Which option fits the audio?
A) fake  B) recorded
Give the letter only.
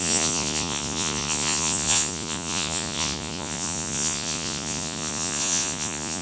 A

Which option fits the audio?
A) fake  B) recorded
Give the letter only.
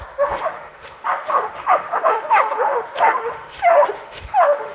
A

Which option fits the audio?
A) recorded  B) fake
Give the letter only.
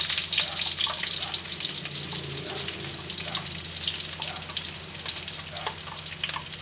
A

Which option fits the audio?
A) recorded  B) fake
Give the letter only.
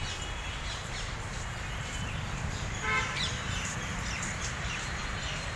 B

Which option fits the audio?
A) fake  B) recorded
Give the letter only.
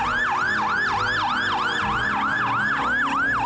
B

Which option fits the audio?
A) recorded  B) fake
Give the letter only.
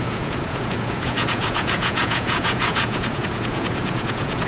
B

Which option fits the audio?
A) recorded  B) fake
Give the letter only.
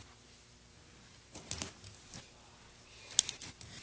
A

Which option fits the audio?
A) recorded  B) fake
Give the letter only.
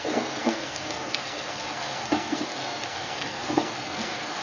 B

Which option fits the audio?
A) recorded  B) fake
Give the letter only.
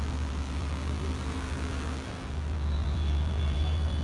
B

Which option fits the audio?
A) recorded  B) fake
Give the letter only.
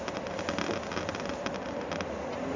A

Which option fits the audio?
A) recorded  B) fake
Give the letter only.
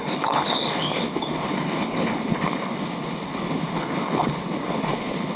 B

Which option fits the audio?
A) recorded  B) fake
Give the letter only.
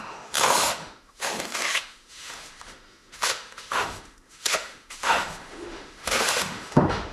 B